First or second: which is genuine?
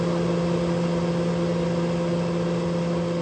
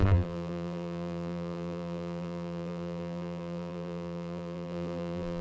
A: first